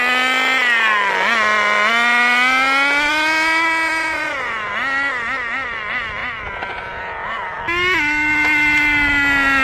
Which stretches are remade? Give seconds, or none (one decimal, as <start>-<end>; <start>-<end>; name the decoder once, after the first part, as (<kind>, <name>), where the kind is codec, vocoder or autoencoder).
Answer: 4.0-4.7 (vocoder, Vocos); 6.2-7.6